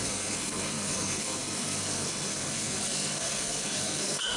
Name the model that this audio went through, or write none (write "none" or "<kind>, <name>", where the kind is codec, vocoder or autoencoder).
codec, SNAC